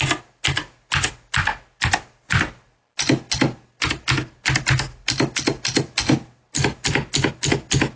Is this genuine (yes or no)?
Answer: yes